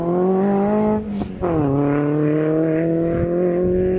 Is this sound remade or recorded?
recorded